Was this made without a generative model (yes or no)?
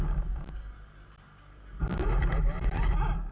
yes